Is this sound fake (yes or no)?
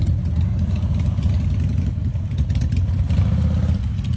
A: no